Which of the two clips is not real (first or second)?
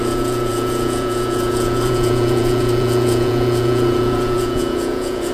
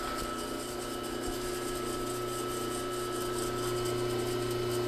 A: first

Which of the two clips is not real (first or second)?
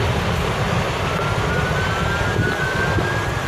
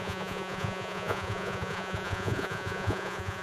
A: second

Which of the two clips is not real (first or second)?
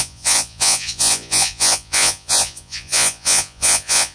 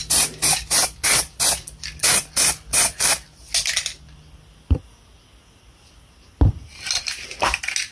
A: first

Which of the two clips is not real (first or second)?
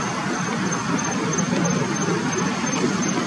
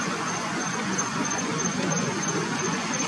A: second